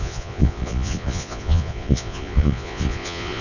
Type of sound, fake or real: fake